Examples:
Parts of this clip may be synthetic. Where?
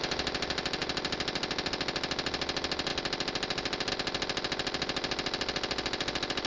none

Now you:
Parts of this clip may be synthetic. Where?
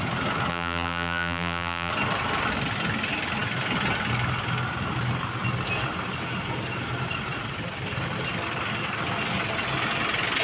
0.5-1.9 (vocoder, BigVGAN v2)